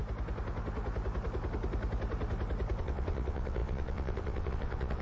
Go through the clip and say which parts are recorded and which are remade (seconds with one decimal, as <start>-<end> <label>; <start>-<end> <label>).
0.0-2.8 recorded; 2.8-5.0 remade